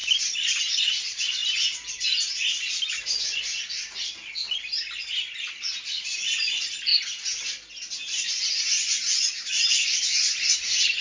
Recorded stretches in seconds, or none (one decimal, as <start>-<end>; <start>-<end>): 0.0-11.0